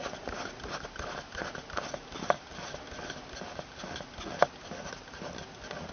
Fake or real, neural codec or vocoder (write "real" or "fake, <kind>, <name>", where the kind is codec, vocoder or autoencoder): real